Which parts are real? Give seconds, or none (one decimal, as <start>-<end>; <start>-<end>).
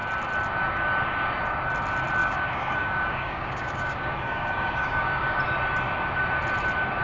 0.0-2.2; 5.4-7.0